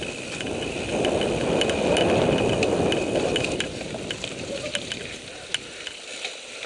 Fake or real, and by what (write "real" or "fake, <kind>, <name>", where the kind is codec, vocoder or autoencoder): real